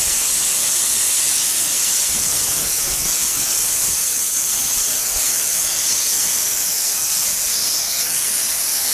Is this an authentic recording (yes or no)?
no